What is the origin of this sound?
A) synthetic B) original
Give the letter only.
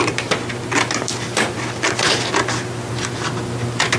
B